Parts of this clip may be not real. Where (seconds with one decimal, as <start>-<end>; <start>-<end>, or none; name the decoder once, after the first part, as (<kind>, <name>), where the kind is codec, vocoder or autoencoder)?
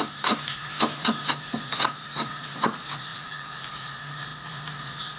3.1-3.7 (vocoder, BigVGAN v2)